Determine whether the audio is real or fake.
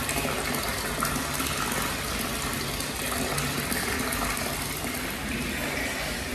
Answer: real